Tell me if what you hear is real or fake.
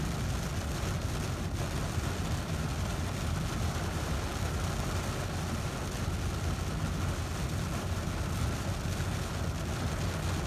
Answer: real